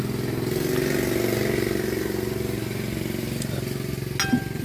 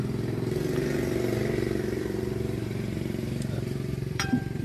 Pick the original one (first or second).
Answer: first